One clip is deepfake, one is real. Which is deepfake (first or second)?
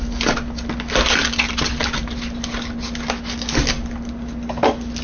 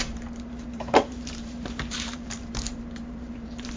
second